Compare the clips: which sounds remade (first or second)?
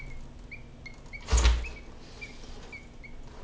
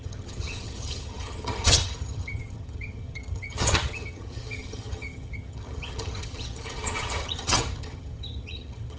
second